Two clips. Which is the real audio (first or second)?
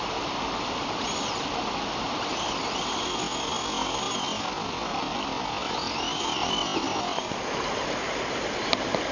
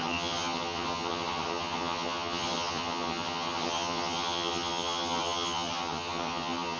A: first